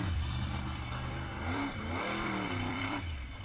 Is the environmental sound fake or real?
fake